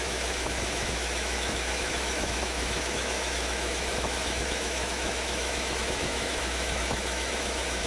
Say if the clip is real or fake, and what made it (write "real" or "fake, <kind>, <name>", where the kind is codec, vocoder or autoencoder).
fake, autoencoder, DAC-VAE